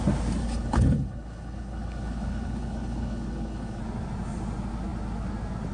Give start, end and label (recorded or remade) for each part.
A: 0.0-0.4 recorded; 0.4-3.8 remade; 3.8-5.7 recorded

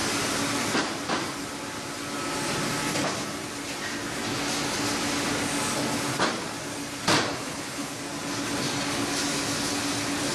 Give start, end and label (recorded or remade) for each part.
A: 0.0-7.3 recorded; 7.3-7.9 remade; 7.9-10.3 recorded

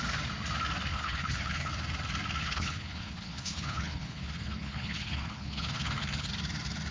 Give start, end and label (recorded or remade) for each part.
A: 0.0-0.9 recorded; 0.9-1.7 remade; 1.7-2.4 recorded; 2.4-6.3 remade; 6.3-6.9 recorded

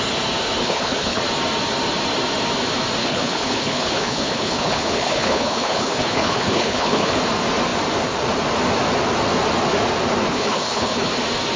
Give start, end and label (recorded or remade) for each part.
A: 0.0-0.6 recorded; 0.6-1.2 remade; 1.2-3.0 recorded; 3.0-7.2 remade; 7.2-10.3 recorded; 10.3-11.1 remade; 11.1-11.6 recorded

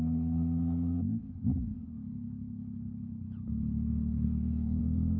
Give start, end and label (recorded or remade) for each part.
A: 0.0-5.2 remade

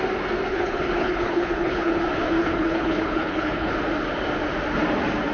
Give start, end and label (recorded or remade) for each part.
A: 0.0-0.5 recorded; 0.5-2.0 remade; 2.0-2.4 recorded; 2.4-3.7 remade; 3.7-5.3 recorded